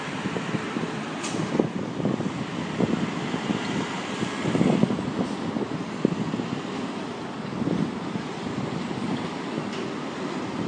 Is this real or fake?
real